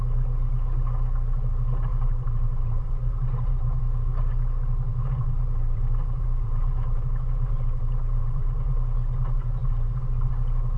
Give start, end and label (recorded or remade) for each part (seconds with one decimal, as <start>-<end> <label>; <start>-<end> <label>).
0.0-1.9 recorded; 1.9-3.8 remade; 3.8-4.9 recorded; 4.9-8.7 remade; 8.7-9.6 recorded; 9.6-10.3 remade; 10.3-10.8 recorded